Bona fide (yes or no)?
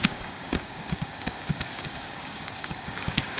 no